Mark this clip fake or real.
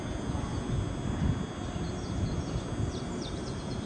real